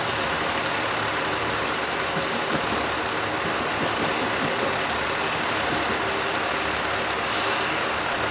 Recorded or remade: remade